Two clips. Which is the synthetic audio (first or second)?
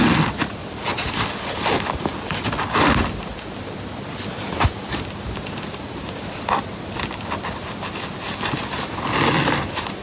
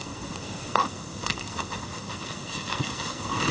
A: second